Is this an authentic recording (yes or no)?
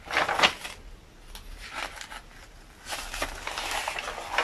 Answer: yes